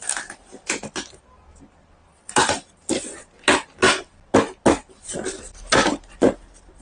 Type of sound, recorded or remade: recorded